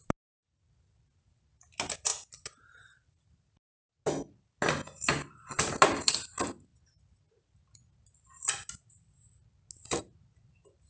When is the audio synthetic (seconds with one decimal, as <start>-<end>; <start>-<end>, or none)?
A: none